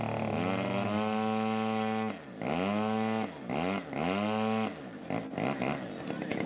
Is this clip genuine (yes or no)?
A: yes